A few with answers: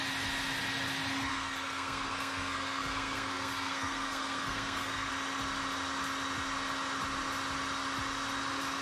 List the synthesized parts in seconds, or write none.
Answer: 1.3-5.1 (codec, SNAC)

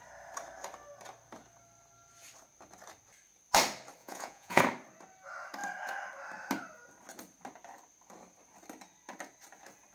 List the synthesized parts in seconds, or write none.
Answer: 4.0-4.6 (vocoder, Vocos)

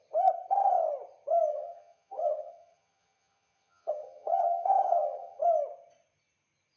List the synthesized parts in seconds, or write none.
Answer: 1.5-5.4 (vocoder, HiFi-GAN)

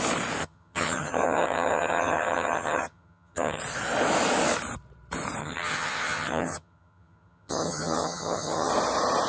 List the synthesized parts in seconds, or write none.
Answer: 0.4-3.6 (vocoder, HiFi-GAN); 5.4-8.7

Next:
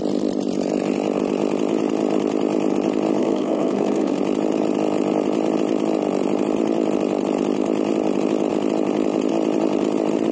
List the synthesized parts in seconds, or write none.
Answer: 3.2-4.2 (codec, SNAC)

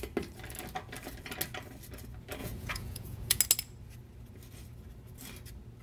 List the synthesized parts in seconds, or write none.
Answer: 2.4-3.4 (vocoder, Vocos)